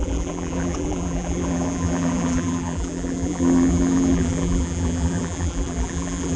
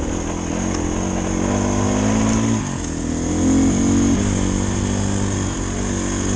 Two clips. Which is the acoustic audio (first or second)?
second